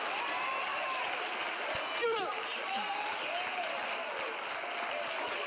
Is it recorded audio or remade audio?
recorded